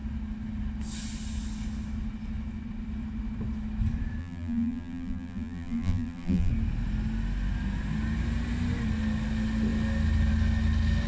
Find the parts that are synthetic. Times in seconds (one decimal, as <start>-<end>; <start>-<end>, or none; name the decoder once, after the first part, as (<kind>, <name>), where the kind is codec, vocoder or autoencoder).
4.2-6.5 (vocoder, BigVGAN v2)